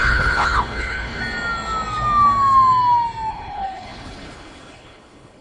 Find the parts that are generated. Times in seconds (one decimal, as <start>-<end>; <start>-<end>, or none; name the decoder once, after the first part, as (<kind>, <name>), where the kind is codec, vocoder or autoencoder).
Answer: 0.0-1.2 (codec, HILCodec); 3.3-5.4